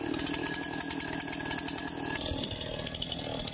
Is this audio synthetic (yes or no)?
no